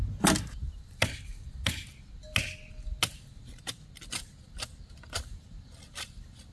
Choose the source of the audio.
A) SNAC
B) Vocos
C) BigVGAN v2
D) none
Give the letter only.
D